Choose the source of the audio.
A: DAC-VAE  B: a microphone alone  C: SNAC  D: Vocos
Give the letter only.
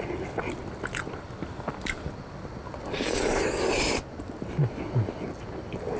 B